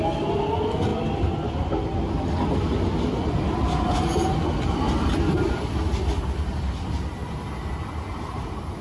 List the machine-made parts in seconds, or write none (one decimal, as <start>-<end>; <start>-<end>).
none